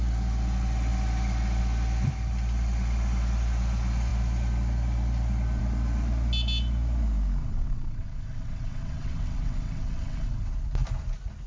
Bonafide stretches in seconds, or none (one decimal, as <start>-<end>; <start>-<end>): 0.0-7.4; 10.5-11.5